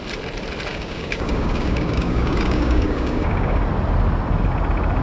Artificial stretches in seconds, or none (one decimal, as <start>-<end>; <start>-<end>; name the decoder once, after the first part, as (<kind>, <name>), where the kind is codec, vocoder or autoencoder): 0.7-3.6 (codec, DAC)